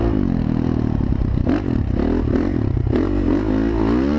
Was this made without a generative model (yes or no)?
yes